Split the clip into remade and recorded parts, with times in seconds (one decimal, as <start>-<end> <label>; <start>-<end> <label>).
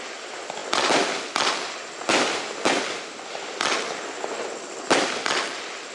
0.0-5.9 recorded